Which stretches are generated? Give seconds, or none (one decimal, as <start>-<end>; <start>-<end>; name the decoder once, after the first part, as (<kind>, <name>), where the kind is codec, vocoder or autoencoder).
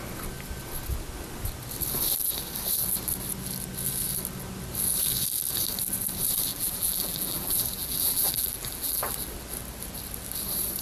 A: 6.5-9.1 (vocoder, BigVGAN v2)